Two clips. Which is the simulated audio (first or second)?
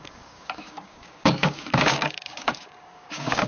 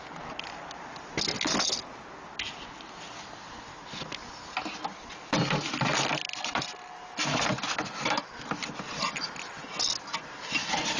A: first